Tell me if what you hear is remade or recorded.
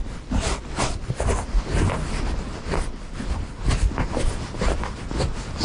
recorded